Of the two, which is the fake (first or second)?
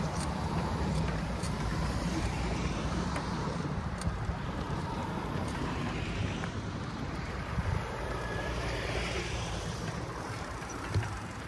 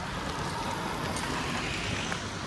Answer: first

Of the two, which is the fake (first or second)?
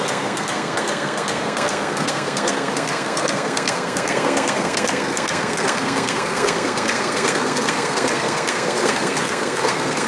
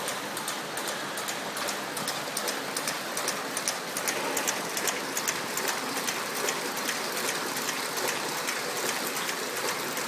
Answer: first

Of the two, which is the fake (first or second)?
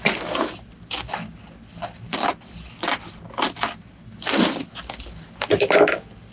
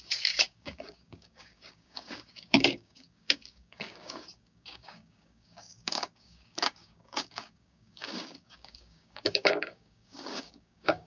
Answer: second